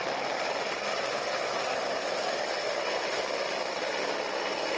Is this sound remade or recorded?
recorded